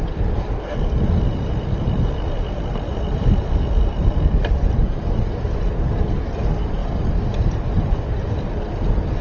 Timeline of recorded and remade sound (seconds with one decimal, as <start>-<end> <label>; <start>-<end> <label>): 0.0-9.2 recorded